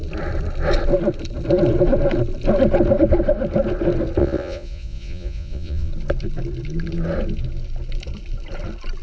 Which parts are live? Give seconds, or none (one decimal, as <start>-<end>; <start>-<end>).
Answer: 0.0-4.2; 5.9-9.0

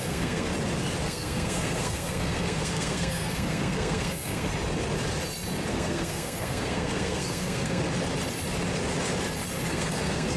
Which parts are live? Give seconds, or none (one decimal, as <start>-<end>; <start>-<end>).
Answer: 0.5-1.0; 4.5-5.7; 7.8-9.7

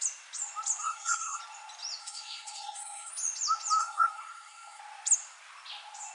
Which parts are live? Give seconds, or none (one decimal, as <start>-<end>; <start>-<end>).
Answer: 0.0-0.8; 1.4-2.0; 3.1-3.8; 4.8-6.1